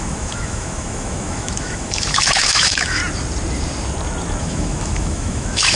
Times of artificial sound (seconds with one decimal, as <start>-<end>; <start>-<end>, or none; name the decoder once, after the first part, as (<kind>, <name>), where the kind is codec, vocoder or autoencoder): 0.0-3.0 (autoencoder, DAC-VAE); 4.4-5.8